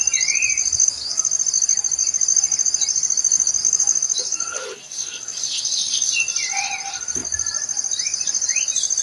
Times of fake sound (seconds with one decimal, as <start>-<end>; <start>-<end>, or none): 0.5-1.3; 3.6-6.1